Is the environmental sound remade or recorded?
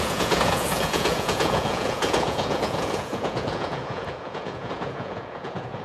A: remade